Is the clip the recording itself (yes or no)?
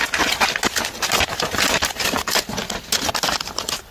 yes